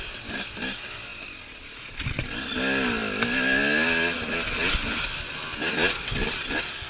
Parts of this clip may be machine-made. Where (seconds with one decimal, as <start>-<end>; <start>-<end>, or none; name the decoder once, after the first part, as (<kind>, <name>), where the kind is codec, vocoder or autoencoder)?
none